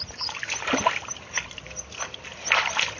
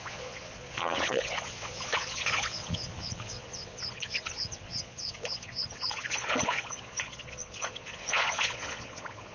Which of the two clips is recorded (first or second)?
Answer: first